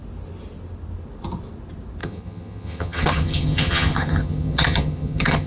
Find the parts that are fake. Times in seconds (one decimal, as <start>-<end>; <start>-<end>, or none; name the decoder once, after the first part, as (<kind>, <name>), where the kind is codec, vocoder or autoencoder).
2.0-5.5 (vocoder, HiFi-GAN)